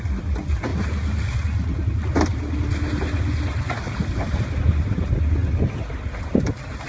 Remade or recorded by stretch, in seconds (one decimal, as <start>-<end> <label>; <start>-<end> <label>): 0.0-6.9 recorded